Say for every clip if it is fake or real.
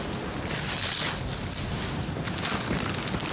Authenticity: real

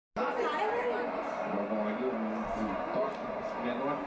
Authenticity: real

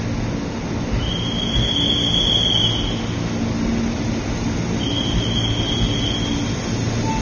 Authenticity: real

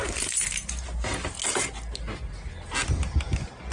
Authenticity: real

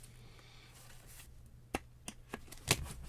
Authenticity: real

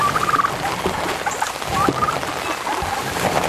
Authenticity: real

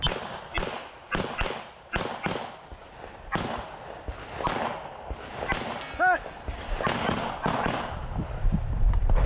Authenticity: real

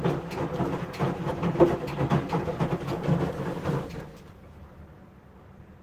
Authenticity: real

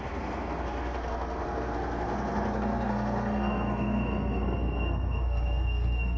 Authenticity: fake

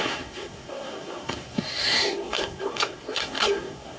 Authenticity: fake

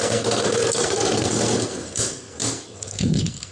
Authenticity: fake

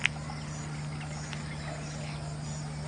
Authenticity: real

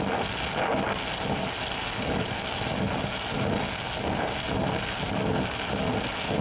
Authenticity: real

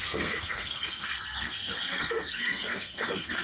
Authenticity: fake